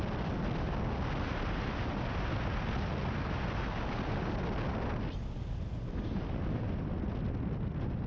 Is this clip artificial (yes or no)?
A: no